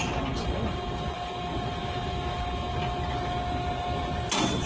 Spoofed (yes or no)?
no